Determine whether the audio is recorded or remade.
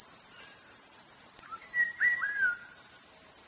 remade